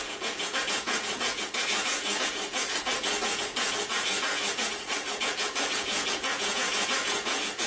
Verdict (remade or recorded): remade